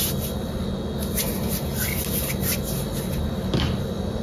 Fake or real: real